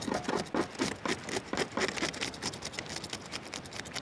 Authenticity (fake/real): real